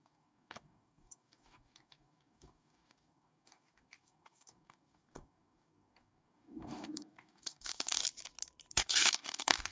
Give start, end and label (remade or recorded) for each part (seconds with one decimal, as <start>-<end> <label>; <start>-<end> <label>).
0.0-8.0 remade; 8.0-8.7 recorded; 8.7-9.7 remade